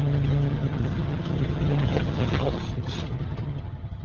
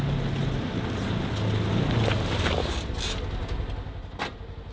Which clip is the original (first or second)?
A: second